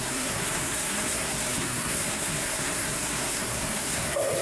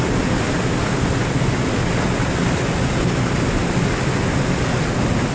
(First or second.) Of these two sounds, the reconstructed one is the first